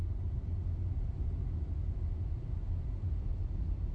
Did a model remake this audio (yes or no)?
no